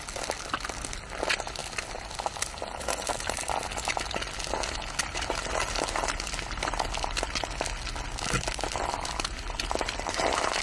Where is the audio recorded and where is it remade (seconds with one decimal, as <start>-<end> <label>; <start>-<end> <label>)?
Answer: 0.0-10.6 recorded